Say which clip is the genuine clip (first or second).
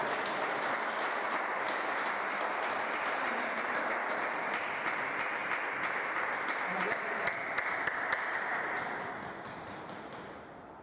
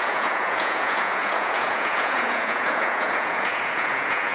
first